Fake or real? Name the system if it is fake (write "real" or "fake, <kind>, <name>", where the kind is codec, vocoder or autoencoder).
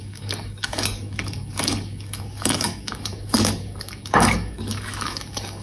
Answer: fake, codec, DAC